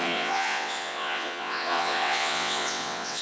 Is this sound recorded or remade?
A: remade